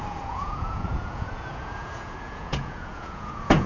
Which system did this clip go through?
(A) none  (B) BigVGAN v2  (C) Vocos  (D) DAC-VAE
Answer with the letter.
C